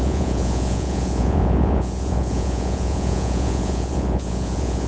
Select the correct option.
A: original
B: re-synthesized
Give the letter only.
B